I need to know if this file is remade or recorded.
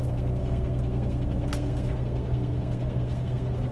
remade